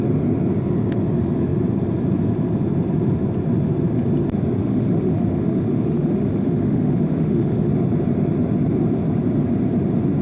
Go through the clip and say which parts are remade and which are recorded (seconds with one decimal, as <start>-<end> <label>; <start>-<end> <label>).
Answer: 0.0-4.6 recorded; 4.6-7.7 remade; 7.7-10.2 recorded